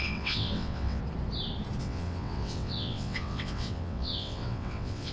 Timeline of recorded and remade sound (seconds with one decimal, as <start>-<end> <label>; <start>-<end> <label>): 0.0-1.0 remade; 1.0-1.8 recorded; 1.8-5.1 remade